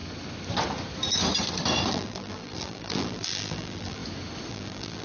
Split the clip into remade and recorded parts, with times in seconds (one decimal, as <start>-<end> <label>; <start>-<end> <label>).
0.0-1.9 recorded; 1.9-4.0 remade; 4.0-4.5 recorded; 4.5-5.0 remade